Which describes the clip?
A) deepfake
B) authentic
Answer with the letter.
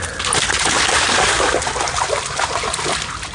B